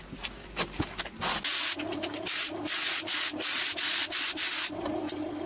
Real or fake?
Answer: real